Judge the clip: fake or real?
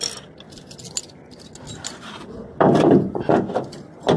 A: real